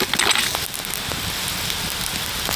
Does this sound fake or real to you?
real